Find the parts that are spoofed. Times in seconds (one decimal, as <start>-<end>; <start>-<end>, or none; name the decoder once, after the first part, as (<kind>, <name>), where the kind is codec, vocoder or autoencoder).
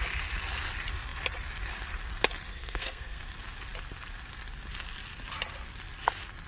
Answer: 2.5-3.2 (codec, SNAC)